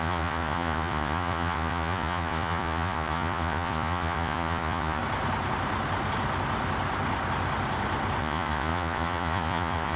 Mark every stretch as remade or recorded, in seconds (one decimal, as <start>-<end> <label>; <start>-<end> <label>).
0.0-5.0 remade; 5.0-8.2 recorded; 8.2-10.0 remade